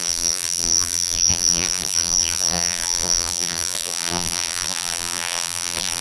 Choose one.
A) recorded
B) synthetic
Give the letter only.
B